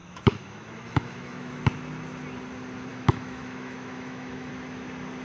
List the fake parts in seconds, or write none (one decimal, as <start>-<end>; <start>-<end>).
0.0-1.6; 2.9-4.5